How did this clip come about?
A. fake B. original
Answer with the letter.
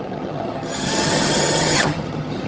A